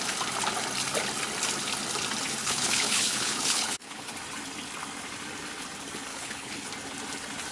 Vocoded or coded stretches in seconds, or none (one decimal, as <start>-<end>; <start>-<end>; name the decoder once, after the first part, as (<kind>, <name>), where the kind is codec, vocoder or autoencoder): 2.4-4.1 (codec, HILCodec); 6.1-6.7

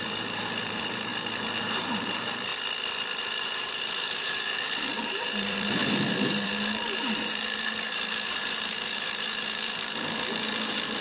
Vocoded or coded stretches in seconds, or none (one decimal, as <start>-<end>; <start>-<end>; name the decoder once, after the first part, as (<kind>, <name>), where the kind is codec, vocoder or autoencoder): 0.0-1.1 (vocoder, BigVGAN v2); 1.6-2.5; 3.2-5.8; 6.3-11.0